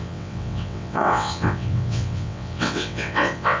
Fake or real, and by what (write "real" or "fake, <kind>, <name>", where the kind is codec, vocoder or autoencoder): fake, vocoder, WaveNeXt